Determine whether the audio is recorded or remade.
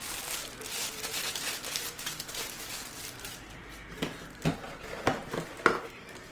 recorded